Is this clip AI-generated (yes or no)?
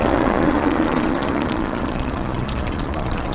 yes